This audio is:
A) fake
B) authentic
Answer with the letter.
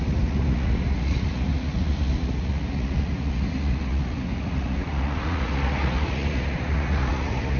A